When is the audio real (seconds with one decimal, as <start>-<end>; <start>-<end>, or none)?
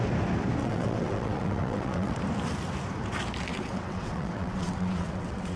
0.0-0.6; 2.2-3.5